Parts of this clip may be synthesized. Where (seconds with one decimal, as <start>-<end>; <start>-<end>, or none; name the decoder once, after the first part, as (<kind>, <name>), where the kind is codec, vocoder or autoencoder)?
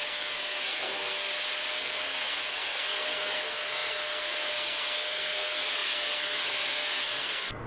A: 0.0-1.3 (codec, SNAC); 1.8-7.7